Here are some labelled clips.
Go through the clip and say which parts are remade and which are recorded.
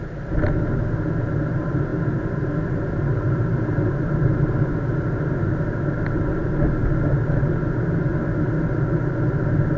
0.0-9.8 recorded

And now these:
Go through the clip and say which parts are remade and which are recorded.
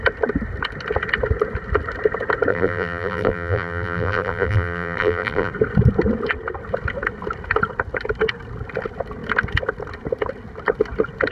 0.0-2.5 recorded; 2.5-5.5 remade; 5.5-11.3 recorded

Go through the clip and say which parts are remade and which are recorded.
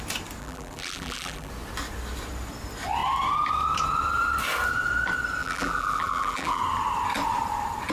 0.0-0.4 recorded; 0.4-1.5 remade; 1.5-5.4 recorded; 5.4-6.6 remade; 6.6-7.9 recorded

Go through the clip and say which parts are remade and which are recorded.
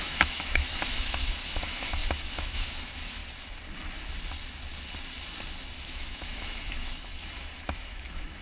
0.0-3.2 remade; 3.2-5.8 recorded; 5.8-8.4 remade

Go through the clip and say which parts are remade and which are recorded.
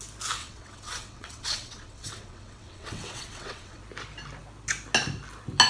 0.0-0.4 recorded; 0.4-3.8 remade; 3.8-5.7 recorded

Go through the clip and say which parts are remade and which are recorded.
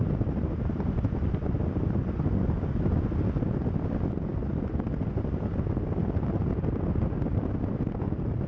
0.0-8.5 recorded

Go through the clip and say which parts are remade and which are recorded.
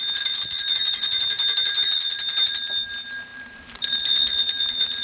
0.0-3.3 recorded; 3.3-4.6 remade; 4.6-5.0 recorded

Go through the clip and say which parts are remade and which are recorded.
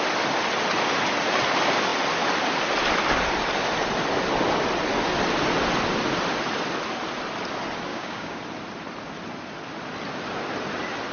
0.0-7.9 recorded; 7.9-8.4 remade; 8.4-11.1 recorded